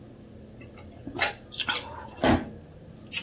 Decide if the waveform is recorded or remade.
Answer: recorded